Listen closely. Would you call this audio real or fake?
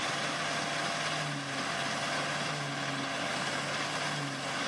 real